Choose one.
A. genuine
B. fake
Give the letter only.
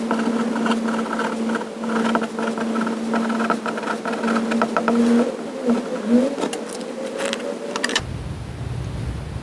A